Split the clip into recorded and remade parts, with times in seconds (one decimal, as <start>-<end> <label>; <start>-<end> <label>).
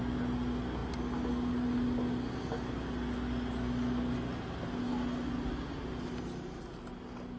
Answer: 0.0-7.4 recorded